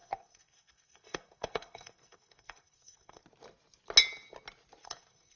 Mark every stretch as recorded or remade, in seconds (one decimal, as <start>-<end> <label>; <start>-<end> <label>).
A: 0.0-3.2 remade; 3.2-4.8 recorded; 4.8-5.4 remade

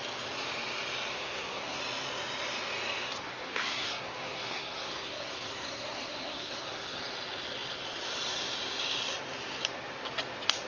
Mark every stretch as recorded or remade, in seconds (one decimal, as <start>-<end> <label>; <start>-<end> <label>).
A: 0.0-1.1 recorded; 1.1-1.8 remade; 1.8-3.2 recorded; 3.2-7.0 remade; 7.0-10.7 recorded

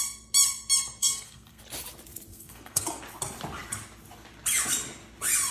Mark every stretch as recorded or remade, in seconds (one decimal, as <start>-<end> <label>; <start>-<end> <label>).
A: 0.0-1.0 recorded; 1.0-1.6 remade; 1.6-2.3 recorded; 2.3-3.0 remade; 3.0-5.5 recorded

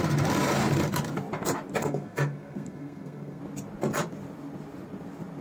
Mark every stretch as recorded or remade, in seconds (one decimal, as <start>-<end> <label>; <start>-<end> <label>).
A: 0.0-1.8 recorded; 1.8-3.4 remade; 3.4-5.4 recorded

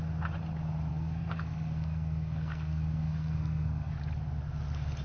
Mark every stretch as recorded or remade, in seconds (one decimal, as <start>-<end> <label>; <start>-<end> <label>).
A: 0.0-0.9 recorded; 0.9-3.9 remade; 3.9-5.0 recorded